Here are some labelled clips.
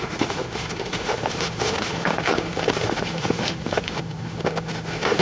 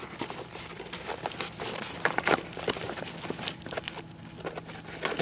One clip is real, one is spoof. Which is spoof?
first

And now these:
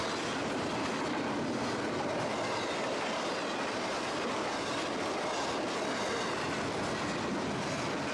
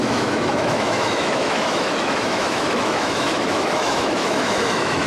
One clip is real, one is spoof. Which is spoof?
second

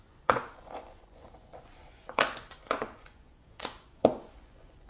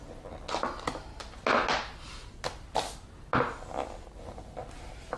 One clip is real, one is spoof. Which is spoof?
first